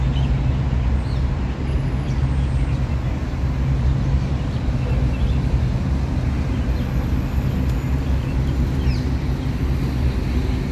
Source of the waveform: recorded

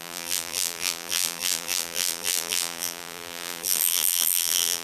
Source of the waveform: remade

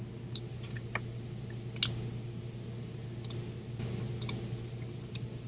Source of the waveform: recorded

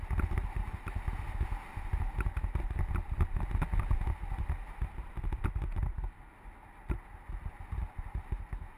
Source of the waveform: recorded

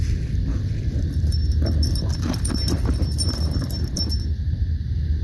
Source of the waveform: remade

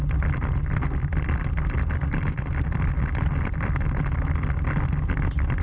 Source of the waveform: recorded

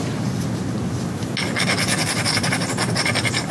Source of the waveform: recorded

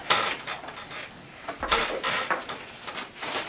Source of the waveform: remade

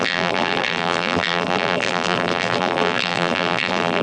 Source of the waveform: remade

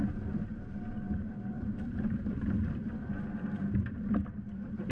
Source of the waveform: remade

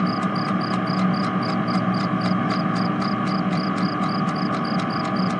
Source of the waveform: recorded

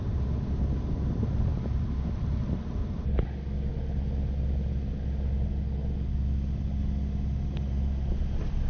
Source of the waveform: recorded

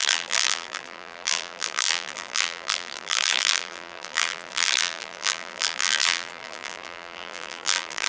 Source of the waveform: remade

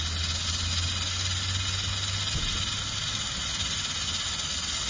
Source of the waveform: recorded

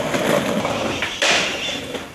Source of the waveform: recorded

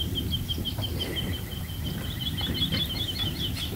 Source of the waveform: recorded